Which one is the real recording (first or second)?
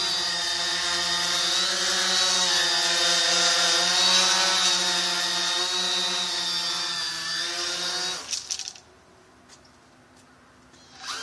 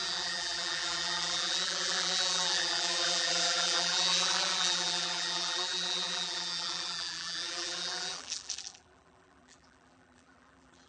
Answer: first